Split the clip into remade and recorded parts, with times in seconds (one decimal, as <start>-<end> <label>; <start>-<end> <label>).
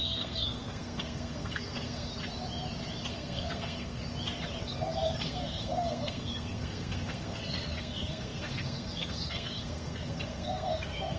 0.0-2.1 remade; 2.1-3.1 recorded; 3.1-4.0 remade; 4.0-4.6 recorded; 4.6-11.2 remade